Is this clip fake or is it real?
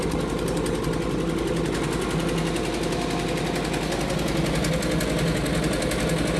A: real